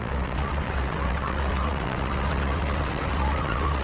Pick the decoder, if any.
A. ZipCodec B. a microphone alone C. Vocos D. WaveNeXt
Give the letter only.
D